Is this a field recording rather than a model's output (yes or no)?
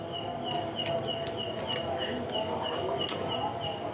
yes